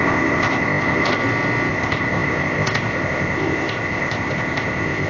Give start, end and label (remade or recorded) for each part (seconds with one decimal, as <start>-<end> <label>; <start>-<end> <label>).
0.0-1.2 remade; 1.2-1.7 recorded; 1.7-5.1 remade